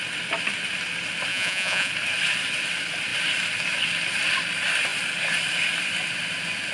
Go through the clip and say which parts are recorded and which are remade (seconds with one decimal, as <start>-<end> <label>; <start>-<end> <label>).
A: 0.0-1.3 recorded; 1.3-1.9 remade; 1.9-6.7 recorded